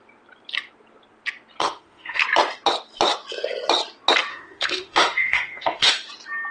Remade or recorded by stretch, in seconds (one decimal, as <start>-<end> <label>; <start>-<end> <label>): 0.0-1.6 recorded; 1.6-2.2 remade; 2.2-4.3 recorded; 4.3-5.9 remade; 5.9-6.5 recorded